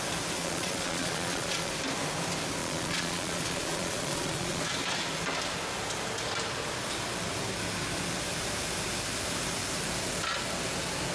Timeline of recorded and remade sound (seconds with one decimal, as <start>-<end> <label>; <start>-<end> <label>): 0.0-0.4 recorded; 0.4-1.7 remade; 1.7-2.6 recorded; 2.6-4.6 remade; 4.6-11.1 recorded